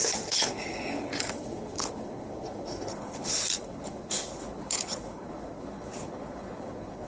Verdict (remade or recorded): remade